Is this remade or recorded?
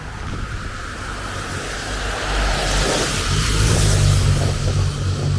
recorded